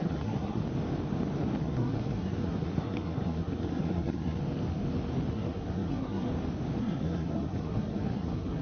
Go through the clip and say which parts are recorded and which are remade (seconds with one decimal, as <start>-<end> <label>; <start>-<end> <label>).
0.0-0.6 remade; 0.6-1.6 recorded; 1.6-4.4 remade; 4.4-5.3 recorded; 5.3-6.3 remade; 6.3-6.8 recorded; 6.8-8.6 remade